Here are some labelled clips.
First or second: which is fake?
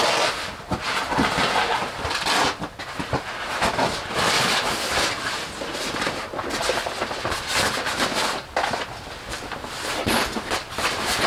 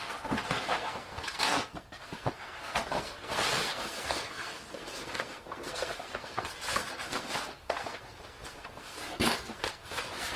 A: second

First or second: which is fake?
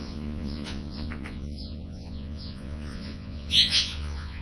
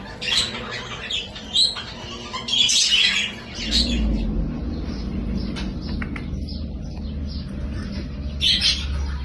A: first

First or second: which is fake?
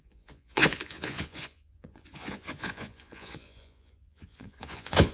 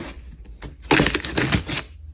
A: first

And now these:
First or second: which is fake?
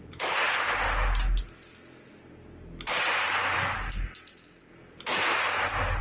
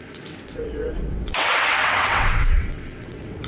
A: second